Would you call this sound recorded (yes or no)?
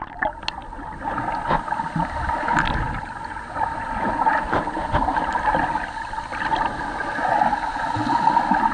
yes